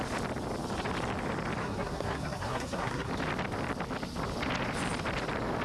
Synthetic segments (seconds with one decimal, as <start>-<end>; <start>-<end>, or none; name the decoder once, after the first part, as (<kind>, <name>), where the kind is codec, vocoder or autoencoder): 1.6-3.1 (codec, SNAC)

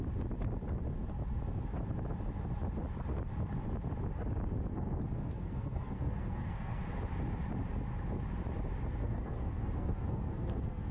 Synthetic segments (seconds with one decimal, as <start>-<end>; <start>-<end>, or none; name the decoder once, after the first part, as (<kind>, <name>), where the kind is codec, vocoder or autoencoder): 4.7-6.8 (codec, SNAC); 9.0-10.9

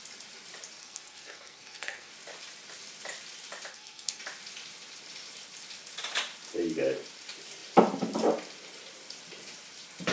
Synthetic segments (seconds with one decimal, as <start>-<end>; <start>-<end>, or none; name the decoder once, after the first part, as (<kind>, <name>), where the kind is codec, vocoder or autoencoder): 0.8-2.1 (codec, SNAC); 3.7-4.2